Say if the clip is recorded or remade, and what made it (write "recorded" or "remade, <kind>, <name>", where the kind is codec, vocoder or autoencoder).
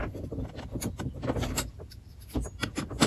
recorded